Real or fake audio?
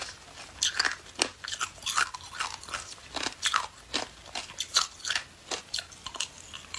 real